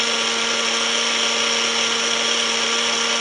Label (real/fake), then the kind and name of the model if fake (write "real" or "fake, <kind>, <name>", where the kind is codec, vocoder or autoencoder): real